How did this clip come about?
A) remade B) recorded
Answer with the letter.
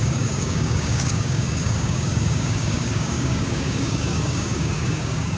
A